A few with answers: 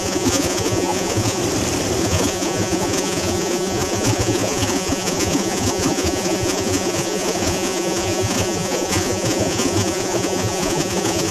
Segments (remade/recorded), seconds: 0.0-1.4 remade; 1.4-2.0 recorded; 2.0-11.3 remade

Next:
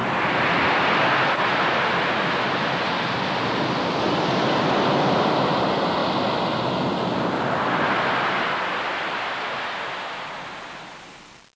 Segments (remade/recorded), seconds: 0.0-11.6 recorded